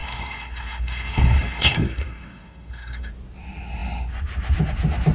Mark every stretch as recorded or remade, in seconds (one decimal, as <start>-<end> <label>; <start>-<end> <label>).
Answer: 0.0-3.1 remade; 3.1-5.1 recorded